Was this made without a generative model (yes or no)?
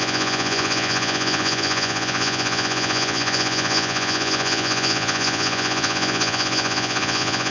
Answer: no